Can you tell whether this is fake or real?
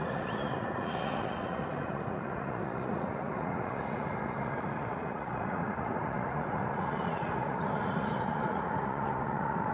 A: fake